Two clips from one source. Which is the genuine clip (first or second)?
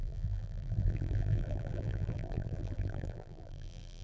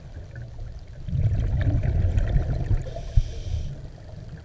second